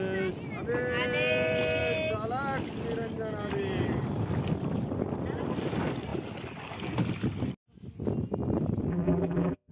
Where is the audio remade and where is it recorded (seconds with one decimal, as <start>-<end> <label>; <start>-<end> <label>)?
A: 0.0-8.9 recorded; 8.9-9.7 remade

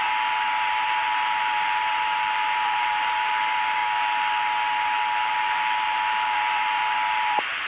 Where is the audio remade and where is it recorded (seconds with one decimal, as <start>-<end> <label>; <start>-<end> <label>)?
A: 0.0-3.8 remade; 3.8-5.2 recorded; 5.2-7.7 remade

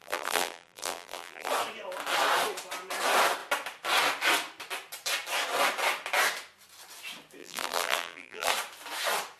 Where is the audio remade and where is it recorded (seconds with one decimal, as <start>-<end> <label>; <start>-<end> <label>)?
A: 0.0-1.5 remade; 1.5-7.4 recorded; 7.4-8.5 remade; 8.5-9.4 recorded